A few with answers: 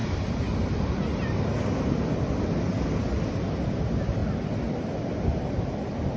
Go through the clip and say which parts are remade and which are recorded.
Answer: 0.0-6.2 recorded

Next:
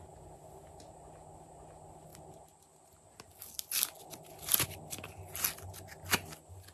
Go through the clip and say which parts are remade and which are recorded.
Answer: 0.0-6.7 recorded

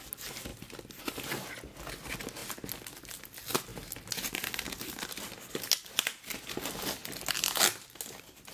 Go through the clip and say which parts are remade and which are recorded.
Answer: 0.0-8.5 recorded

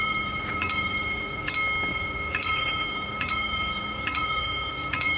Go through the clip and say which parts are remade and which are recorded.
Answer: 0.0-1.5 remade; 1.5-1.9 recorded; 1.9-5.2 remade

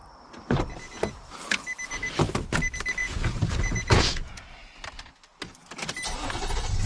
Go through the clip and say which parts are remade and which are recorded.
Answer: 0.0-3.0 recorded; 3.0-4.7 remade; 4.7-6.9 recorded

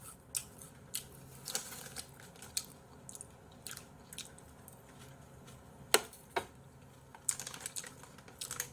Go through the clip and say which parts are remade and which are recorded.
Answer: 0.0-8.7 recorded